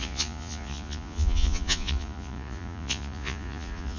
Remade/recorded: remade